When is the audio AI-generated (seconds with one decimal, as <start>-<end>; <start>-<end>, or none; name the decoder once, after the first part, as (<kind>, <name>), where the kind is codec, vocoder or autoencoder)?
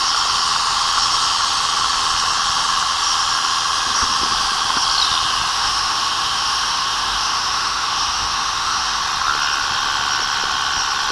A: 5.5-9.0 (autoencoder, DAC-VAE)